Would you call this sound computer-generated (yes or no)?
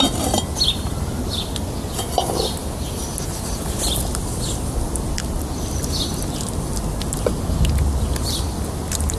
no